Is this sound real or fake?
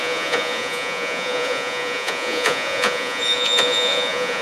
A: fake